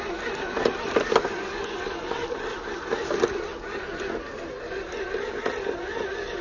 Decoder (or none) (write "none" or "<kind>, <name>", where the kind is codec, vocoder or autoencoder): none